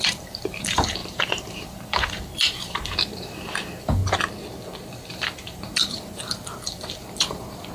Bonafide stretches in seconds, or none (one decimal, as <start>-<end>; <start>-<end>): 4.0-5.1